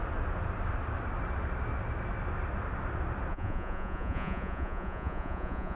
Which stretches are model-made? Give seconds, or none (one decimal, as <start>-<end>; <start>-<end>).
3.3-5.8